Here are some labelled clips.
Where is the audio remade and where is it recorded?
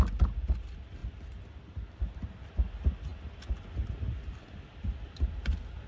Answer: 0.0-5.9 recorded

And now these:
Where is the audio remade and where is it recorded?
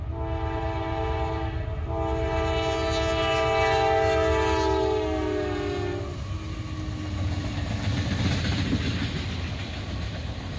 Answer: 0.0-10.6 recorded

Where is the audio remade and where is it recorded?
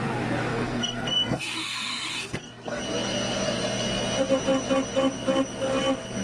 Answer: 0.0-0.5 recorded; 0.5-2.8 remade; 2.8-6.2 recorded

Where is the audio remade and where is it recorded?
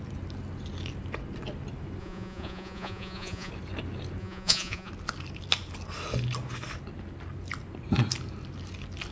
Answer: 0.0-2.0 recorded; 2.0-3.5 remade; 3.5-4.2 recorded; 4.2-4.9 remade; 4.9-9.1 recorded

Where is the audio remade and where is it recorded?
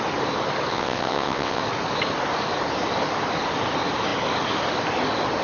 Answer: 0.0-0.7 recorded; 0.7-1.6 remade; 1.6-5.4 recorded